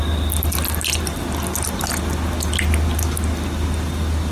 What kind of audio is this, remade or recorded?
recorded